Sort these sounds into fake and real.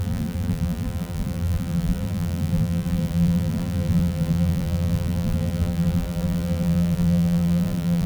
fake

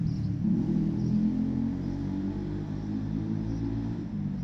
real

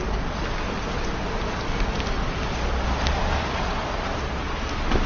real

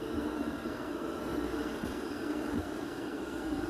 fake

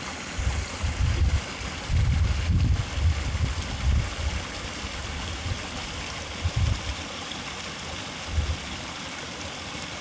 real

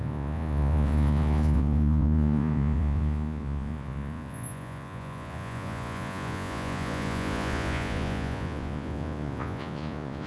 fake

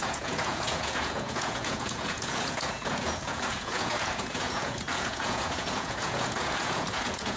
fake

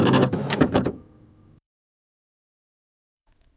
fake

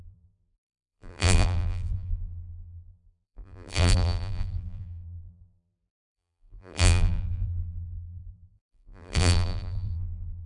fake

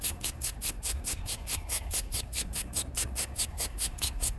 fake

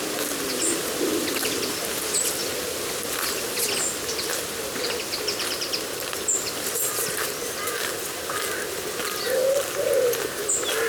real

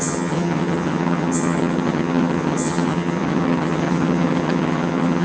fake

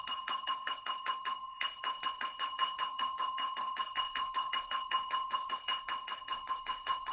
fake